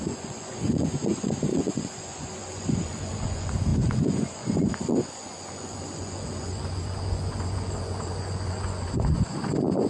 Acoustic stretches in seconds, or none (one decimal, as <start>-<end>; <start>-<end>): none